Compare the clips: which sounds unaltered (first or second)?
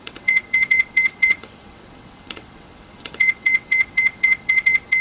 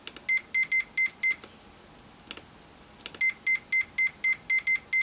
second